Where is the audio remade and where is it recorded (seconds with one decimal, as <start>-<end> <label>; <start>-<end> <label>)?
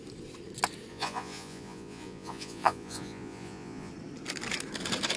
0.0-0.9 recorded; 0.9-3.9 remade; 3.9-5.2 recorded